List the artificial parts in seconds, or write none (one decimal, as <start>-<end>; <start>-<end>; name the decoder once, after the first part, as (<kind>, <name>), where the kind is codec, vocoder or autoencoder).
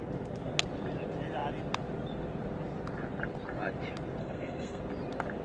4.2-4.8 (codec, SNAC)